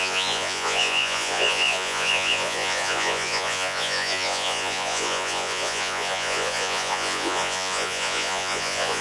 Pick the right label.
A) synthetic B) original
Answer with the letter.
A